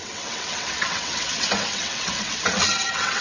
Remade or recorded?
remade